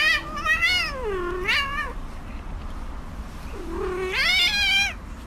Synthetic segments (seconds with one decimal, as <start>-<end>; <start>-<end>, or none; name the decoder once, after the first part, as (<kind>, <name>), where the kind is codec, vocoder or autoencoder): 1.7-2.4 (vocoder, BigVGAN v2)

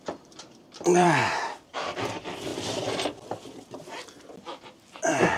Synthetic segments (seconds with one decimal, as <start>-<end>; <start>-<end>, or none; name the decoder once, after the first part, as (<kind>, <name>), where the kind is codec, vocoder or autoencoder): 0.0-1.2 (vocoder, BigVGAN v2); 1.7-5.4

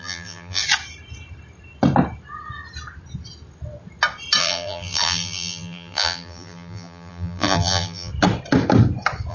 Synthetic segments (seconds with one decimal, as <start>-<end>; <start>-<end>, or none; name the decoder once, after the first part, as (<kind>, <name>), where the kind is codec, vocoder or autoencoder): 0.0-0.6 (vocoder, BigVGAN v2); 4.4-8.1

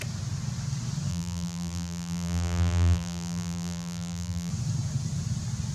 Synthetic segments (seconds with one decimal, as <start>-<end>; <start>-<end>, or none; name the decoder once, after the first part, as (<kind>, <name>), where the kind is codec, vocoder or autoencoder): 1.1-4.5 (vocoder, BigVGAN v2)

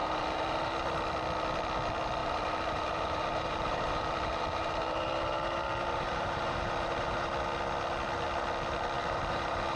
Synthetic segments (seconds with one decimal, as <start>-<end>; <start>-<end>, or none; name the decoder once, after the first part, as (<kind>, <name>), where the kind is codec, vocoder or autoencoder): 0.0-0.7 (vocoder, BigVGAN v2); 2.2-7.3; 9.0-9.8

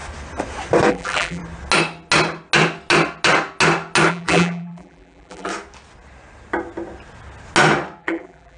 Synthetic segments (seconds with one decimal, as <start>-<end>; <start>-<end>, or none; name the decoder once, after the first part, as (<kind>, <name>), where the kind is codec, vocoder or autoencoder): 0.9-1.4 (vocoder, BigVGAN v2); 4.1-5.5; 8.0-8.6